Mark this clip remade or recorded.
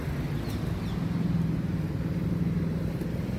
recorded